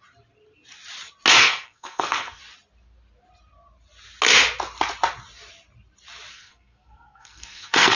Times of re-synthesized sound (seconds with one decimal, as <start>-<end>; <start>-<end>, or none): 1.4-2.4; 6.3-8.0